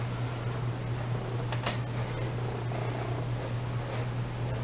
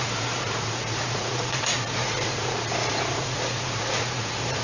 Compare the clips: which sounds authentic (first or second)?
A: first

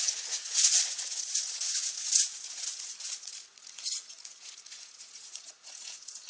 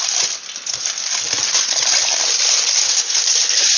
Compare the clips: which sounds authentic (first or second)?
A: second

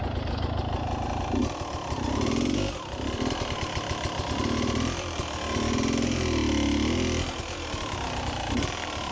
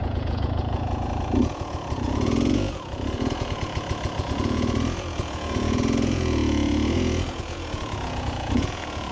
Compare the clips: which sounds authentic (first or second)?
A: first